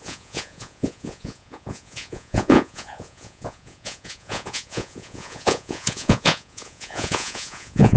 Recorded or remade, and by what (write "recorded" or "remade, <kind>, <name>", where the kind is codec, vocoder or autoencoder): remade, vocoder, Vocos